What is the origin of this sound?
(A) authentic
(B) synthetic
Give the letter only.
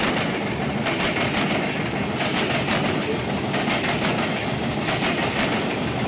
A